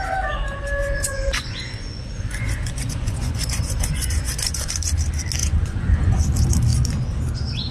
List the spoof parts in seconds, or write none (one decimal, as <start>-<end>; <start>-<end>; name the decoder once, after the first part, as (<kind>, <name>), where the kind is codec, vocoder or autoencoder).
0.8-4.7 (vocoder, Vocos); 5.4-6.2